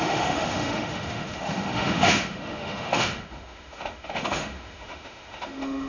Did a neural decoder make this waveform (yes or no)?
yes